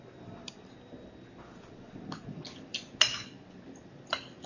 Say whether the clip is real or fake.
real